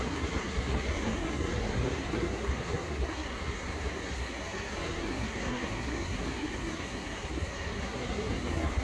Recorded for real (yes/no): no